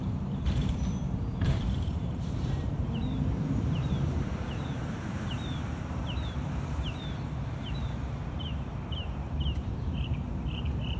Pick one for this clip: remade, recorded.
remade